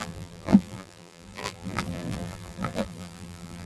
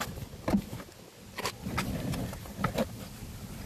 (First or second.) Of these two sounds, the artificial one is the first